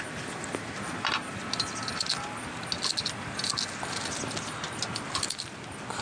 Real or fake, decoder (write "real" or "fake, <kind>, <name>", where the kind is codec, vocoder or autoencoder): real